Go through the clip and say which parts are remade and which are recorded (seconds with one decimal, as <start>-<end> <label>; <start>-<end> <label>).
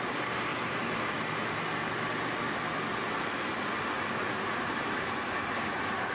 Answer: 0.0-0.5 recorded; 0.5-2.4 remade; 2.4-6.1 recorded